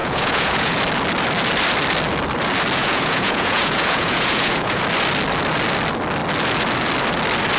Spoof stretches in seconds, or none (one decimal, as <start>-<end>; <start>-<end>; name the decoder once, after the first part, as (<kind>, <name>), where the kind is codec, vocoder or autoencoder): 0.0-0.8 (vocoder, Vocos); 2.8-4.8